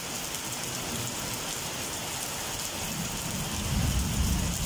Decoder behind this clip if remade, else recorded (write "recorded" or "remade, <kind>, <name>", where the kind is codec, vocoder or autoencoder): recorded